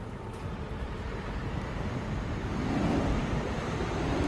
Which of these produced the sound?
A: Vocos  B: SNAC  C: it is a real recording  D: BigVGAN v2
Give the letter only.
D